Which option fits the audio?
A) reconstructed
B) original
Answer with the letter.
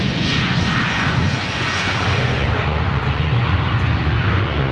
A